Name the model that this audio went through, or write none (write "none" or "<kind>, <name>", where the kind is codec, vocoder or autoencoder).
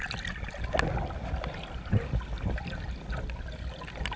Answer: none